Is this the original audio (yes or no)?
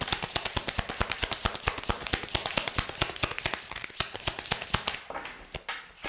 yes